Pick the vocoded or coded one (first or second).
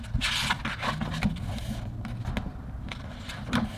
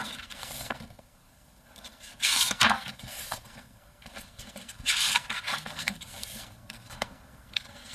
second